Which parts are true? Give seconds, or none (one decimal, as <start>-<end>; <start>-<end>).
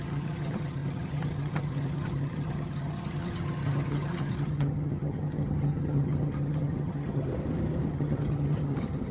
7.3-7.9